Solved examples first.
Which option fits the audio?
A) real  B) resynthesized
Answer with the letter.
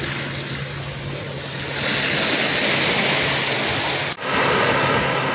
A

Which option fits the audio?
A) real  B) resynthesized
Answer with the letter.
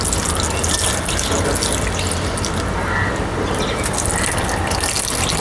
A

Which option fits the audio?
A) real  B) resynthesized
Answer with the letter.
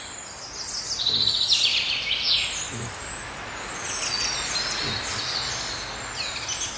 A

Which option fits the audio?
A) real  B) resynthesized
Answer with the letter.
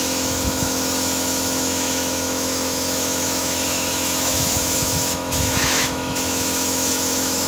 B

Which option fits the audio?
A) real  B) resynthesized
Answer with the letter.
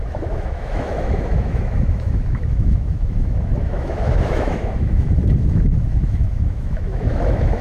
B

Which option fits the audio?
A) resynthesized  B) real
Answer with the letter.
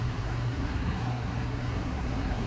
A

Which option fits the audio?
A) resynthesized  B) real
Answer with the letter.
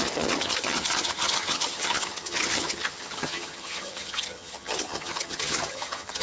A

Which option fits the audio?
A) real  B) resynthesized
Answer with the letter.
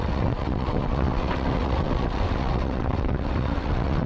B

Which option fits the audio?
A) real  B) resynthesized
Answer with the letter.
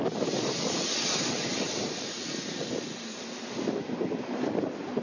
A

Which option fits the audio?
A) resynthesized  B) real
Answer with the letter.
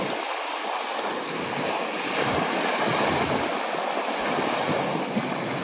B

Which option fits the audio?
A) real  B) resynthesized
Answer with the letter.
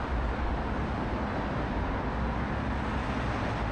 A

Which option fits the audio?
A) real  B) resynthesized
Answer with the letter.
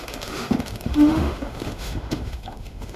B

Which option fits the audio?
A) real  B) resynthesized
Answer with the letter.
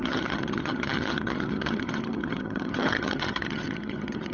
B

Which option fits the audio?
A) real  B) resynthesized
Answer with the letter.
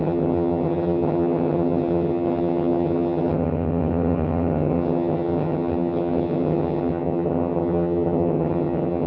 B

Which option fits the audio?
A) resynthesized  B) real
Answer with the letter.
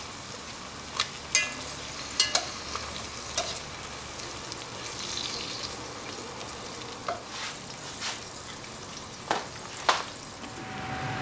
B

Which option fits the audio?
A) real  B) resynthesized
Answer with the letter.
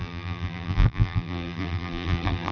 B